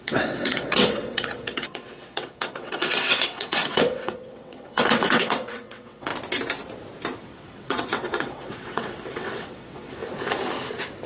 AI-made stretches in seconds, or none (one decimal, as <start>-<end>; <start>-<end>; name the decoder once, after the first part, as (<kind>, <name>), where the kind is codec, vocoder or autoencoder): 0.0-6.1 (vocoder, WaveNeXt); 7.2-10.0